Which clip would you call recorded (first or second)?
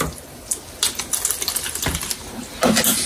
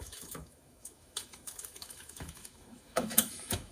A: first